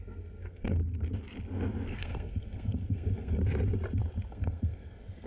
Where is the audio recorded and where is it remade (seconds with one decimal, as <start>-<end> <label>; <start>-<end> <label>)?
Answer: 0.0-0.8 remade; 0.8-1.9 recorded; 1.9-3.4 remade; 3.4-4.3 recorded; 4.3-5.3 remade